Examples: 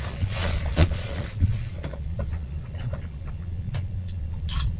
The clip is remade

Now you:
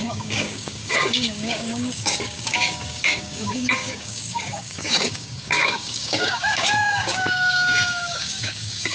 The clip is remade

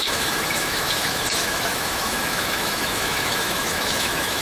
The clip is remade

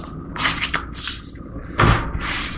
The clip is recorded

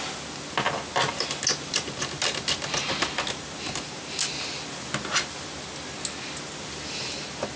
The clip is recorded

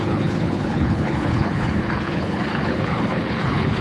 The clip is remade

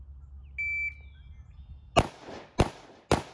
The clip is recorded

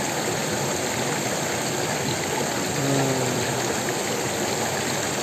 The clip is recorded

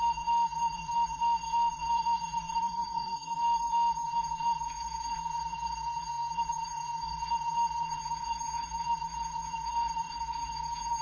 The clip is remade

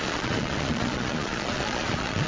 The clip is remade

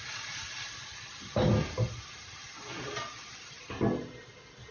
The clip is recorded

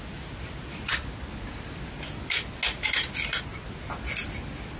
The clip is recorded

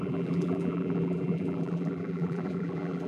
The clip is remade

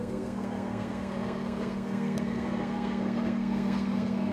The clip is remade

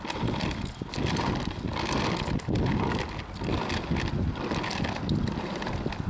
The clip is recorded